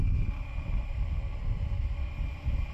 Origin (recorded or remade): remade